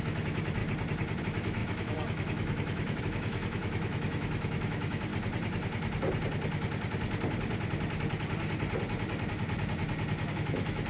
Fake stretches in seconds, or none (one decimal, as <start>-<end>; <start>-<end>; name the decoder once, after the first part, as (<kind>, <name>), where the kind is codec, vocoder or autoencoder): 0.0-0.6 (autoencoder, DAC-VAE); 1.2-5.1; 10.3-10.9